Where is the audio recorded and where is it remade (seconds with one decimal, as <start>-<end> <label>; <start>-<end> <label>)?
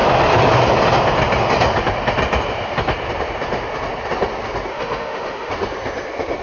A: 0.0-4.7 recorded; 4.7-5.5 remade; 5.5-6.4 recorded